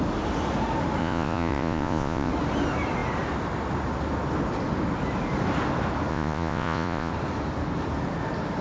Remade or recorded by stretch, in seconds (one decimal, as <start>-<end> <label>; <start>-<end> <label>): 0.0-1.0 recorded; 1.0-2.3 remade; 2.3-6.1 recorded; 6.1-7.1 remade; 7.1-8.6 recorded